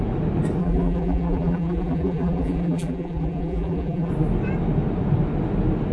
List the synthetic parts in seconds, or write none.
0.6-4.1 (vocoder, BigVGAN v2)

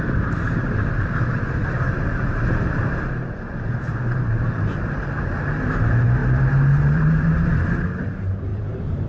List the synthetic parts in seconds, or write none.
0.0-1.6 (vocoder, BigVGAN v2); 2.4-6.2; 6.9-9.1

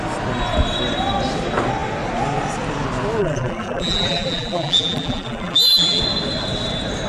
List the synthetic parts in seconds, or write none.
3.2-6.0 (vocoder, BigVGAN v2)